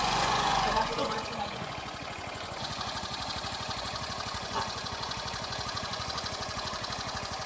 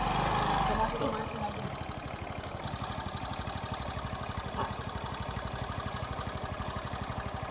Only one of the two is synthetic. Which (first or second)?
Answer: first